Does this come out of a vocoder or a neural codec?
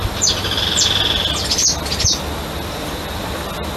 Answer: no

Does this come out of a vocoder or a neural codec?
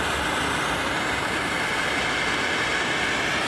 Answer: no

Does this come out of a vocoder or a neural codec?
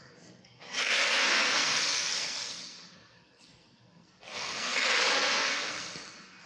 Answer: yes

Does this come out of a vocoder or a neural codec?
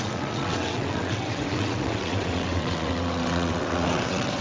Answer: yes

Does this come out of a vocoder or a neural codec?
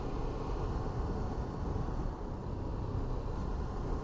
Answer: no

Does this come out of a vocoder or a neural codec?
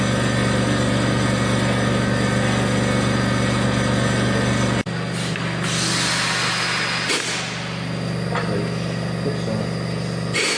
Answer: no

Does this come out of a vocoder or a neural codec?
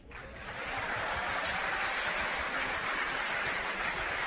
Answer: no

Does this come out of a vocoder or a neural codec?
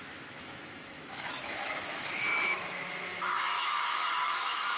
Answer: yes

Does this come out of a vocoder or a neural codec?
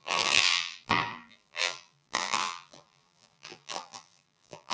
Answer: yes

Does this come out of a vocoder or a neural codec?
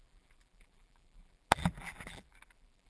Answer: yes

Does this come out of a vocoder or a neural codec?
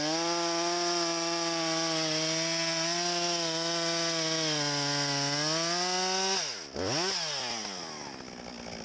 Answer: no